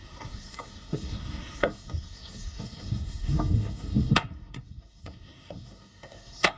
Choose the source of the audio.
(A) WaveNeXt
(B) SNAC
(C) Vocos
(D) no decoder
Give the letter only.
B